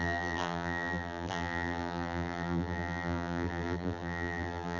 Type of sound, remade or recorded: remade